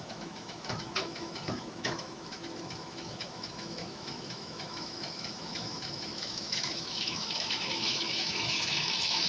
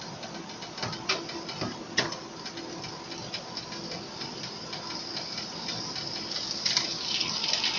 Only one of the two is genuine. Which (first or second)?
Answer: second